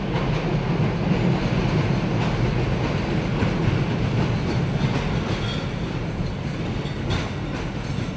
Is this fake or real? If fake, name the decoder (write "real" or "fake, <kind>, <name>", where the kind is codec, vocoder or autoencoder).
real